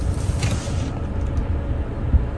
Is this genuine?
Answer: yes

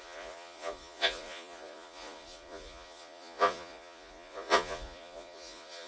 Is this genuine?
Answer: no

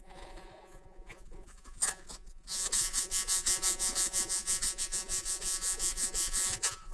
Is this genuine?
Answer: no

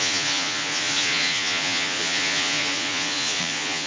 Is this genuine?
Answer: no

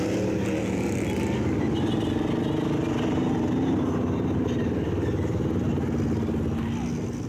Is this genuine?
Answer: yes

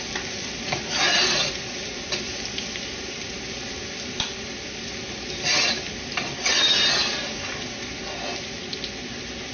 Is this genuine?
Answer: yes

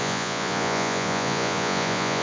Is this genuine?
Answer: no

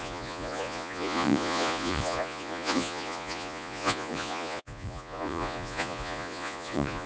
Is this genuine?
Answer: no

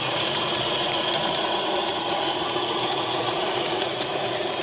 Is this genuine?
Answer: no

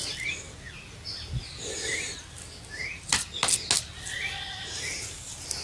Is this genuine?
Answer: yes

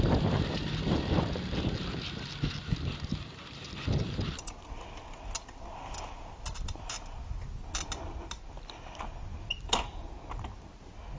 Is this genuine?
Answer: yes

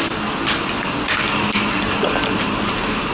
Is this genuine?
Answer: yes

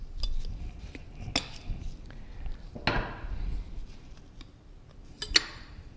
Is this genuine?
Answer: yes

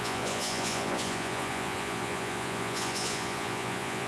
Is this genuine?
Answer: no